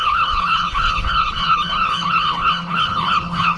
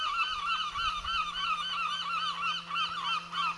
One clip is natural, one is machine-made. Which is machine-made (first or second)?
first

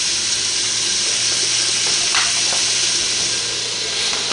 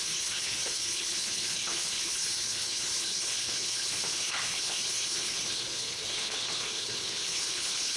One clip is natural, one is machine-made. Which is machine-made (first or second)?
second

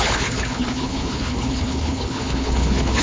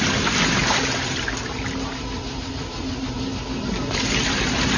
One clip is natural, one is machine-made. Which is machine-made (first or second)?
first